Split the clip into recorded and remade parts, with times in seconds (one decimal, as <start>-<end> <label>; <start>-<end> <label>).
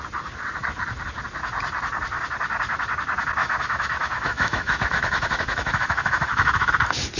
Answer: 0.0-3.4 recorded; 3.4-6.7 remade; 6.7-7.2 recorded